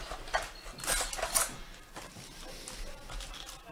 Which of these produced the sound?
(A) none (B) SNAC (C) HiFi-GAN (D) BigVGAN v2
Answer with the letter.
A